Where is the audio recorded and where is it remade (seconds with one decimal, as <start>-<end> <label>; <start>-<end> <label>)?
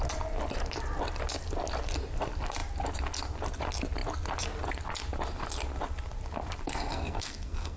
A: 0.0-6.6 recorded; 6.6-7.8 remade